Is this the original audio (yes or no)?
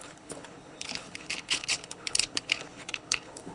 no